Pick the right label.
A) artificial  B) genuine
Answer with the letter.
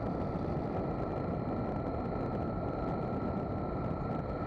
B